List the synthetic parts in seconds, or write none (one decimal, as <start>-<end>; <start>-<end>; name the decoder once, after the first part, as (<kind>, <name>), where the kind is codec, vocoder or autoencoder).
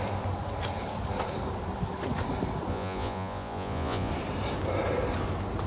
2.7-4.1 (vocoder, Vocos)